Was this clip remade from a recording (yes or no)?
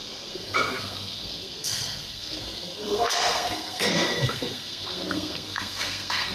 yes